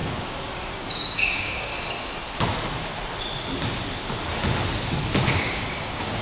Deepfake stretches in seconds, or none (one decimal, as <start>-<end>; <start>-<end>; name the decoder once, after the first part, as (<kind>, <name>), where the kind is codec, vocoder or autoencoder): 0.7-1.7 (codec, DAC); 5.4-6.2